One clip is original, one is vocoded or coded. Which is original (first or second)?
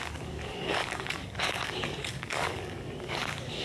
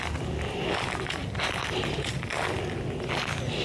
second